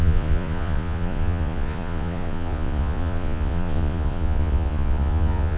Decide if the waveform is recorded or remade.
remade